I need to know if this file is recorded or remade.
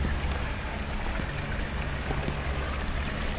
recorded